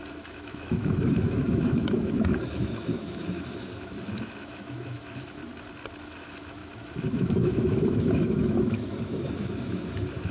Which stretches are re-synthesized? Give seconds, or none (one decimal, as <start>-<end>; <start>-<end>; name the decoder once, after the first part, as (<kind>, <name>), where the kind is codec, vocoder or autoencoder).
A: 0.0-5.4 (autoencoder, DAC-VAE); 6.0-10.3